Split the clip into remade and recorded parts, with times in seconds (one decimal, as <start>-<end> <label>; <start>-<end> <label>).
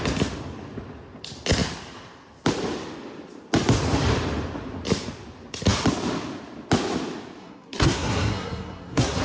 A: 0.0-7.4 recorded; 7.4-9.2 remade